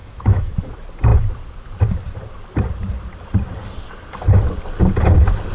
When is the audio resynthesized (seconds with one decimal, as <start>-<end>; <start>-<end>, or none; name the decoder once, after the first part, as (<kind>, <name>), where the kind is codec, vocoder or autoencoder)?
0.0-0.7 (autoencoder, DAC-VAE)